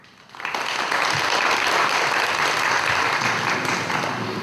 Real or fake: real